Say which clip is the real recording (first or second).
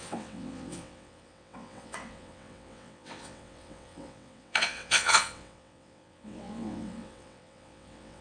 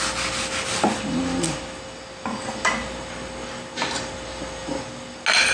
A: second